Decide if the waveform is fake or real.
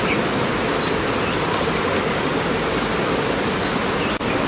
real